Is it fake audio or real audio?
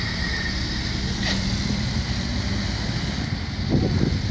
real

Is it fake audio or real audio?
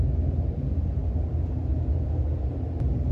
real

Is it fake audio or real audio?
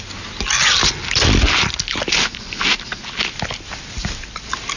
real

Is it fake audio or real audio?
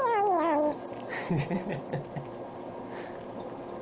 real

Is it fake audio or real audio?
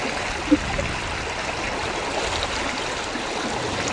real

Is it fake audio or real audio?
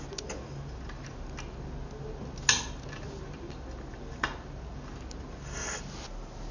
real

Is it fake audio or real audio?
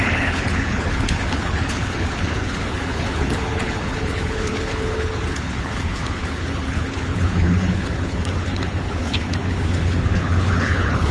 fake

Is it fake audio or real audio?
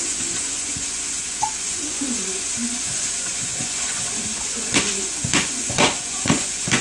fake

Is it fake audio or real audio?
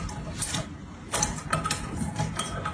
real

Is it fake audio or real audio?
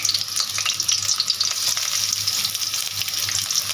real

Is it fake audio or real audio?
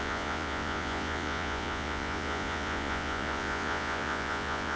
fake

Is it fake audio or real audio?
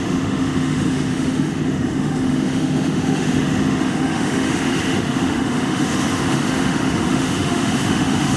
fake